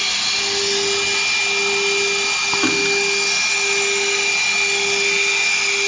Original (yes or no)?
yes